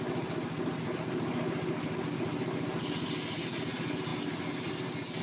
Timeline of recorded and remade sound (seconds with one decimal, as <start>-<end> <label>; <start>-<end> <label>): 0.0-5.2 recorded